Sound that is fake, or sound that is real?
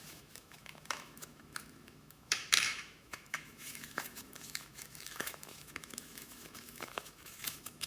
fake